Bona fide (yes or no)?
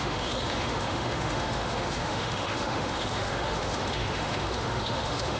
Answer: no